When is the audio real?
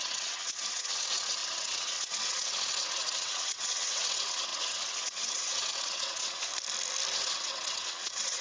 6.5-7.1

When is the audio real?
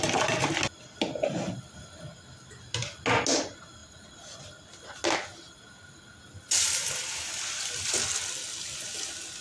0.0-9.4